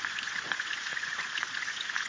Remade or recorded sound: remade